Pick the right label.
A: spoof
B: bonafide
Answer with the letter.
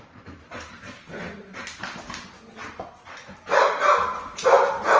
A